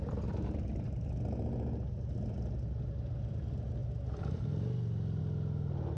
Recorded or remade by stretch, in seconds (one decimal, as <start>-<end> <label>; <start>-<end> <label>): 0.0-3.8 recorded; 3.8-5.2 remade; 5.2-6.0 recorded